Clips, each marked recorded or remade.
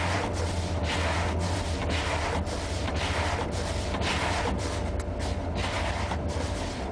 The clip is recorded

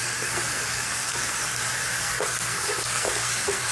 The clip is remade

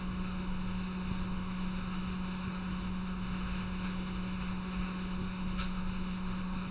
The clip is remade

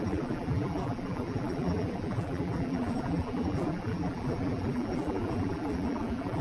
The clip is remade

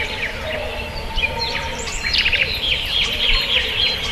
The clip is remade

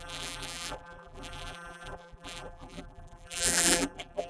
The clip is remade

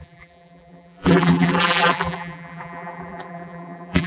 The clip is remade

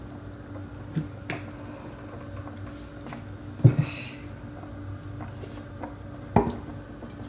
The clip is recorded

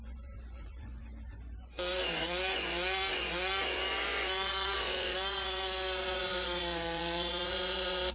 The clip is remade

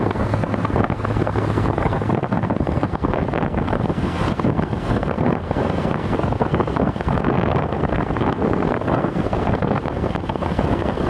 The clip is remade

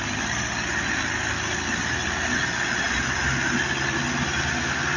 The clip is recorded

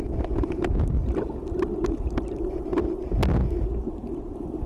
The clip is recorded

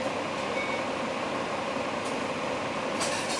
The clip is recorded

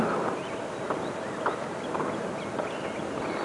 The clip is recorded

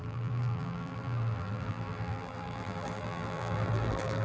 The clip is remade